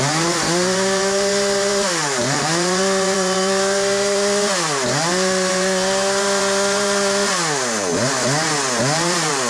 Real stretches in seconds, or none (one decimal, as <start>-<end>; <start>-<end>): 7.9-8.8